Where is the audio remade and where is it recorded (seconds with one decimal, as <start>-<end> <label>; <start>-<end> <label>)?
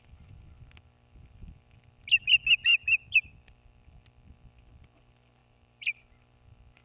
0.0-5.4 recorded; 5.4-6.1 remade; 6.1-6.8 recorded